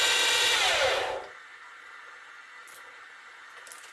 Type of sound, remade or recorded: recorded